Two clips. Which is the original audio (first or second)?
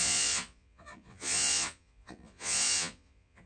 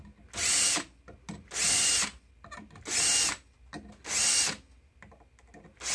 second